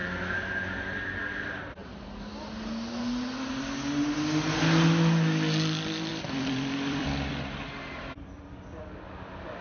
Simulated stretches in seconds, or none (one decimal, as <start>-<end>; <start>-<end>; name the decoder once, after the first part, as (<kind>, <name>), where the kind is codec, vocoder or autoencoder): 6.1-7.3 (vocoder, BigVGAN v2)